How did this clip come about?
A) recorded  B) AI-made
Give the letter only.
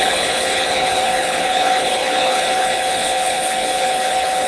B